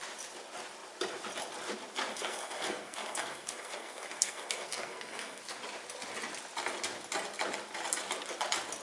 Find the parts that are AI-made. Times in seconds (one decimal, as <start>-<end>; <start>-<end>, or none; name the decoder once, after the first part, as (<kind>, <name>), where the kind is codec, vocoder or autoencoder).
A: 2.1-5.4 (codec, SNAC)